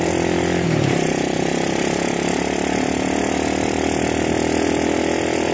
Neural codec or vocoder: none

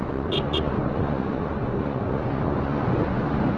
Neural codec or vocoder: vocoder, Vocos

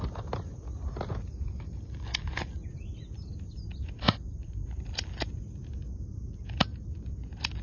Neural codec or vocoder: none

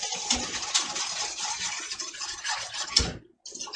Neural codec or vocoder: none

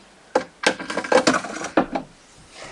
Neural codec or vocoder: none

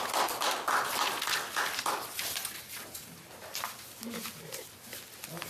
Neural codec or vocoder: none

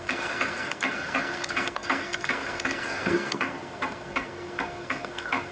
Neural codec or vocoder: codec, SNAC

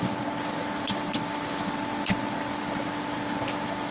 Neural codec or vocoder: none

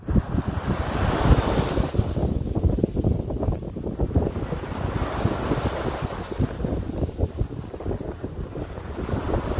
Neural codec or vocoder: none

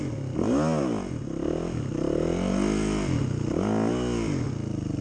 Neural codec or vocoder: none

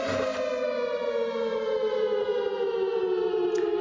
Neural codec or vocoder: none